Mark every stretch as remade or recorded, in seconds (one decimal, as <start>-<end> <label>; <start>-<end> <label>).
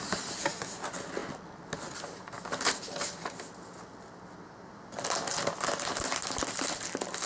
0.0-7.3 recorded